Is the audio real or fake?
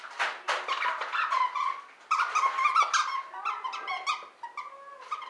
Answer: real